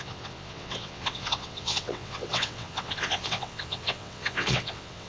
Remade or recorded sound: remade